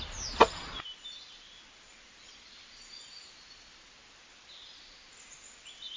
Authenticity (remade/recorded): recorded